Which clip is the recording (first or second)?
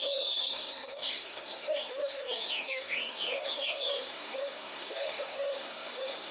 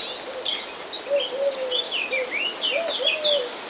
second